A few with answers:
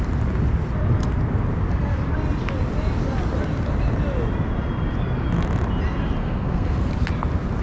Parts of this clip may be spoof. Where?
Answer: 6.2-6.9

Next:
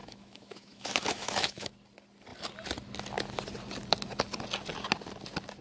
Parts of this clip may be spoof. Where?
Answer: 0.0-1.7